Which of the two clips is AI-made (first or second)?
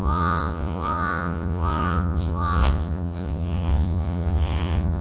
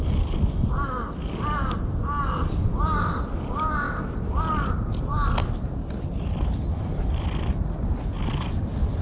first